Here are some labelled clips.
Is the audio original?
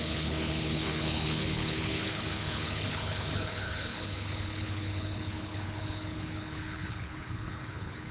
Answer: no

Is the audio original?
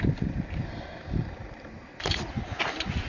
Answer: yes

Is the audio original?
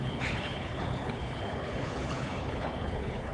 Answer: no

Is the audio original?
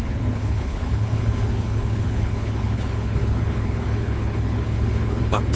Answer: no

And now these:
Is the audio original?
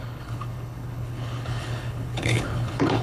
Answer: no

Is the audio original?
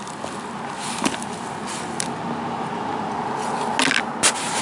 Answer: yes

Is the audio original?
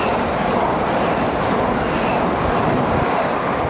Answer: yes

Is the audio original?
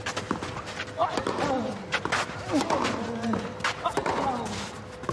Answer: yes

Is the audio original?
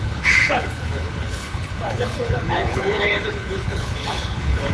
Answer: no